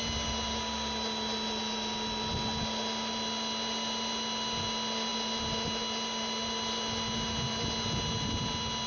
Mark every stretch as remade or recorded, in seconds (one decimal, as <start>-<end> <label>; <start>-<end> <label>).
0.0-8.9 recorded